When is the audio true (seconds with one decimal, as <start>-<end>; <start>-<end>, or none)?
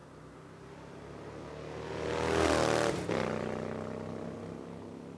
0.0-5.2